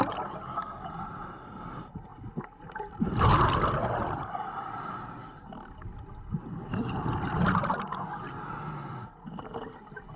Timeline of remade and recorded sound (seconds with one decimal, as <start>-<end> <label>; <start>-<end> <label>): 0.0-3.8 recorded; 3.8-5.0 remade; 5.0-10.2 recorded